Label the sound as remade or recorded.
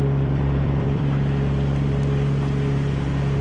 remade